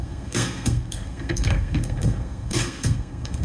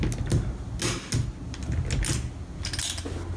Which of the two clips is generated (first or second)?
first